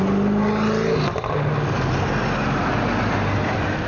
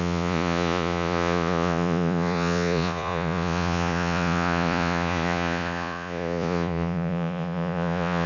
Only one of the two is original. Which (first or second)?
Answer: first